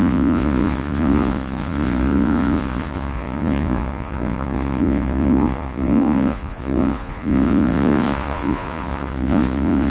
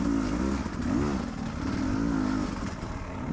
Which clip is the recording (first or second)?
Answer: second